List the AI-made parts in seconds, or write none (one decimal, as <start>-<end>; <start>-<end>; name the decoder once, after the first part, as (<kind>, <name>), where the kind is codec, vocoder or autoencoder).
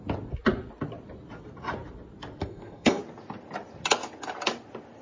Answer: 2.4-3.0 (codec, SNAC)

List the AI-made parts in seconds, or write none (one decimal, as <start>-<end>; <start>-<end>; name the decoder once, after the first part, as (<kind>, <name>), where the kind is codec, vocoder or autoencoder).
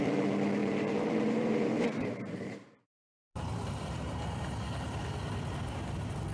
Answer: 0.6-4.4 (vocoder, BigVGAN v2)